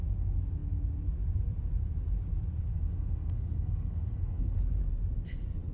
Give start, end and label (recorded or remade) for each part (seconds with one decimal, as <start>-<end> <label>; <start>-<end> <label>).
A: 0.0-2.7 recorded; 2.7-4.6 remade; 4.6-5.7 recorded